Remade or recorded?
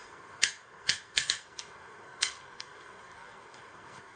remade